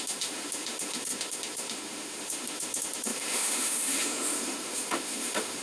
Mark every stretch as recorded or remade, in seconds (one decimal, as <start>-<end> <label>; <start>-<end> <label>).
0.0-5.6 remade